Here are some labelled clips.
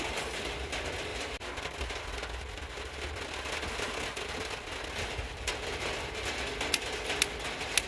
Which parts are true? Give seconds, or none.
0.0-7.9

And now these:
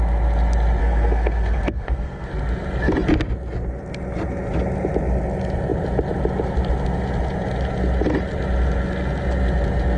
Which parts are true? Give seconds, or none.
0.0-0.8; 2.3-10.0

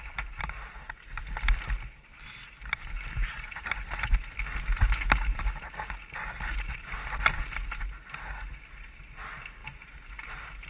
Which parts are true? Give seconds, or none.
0.0-10.7

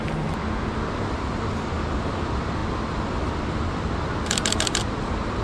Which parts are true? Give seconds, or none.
0.0-5.4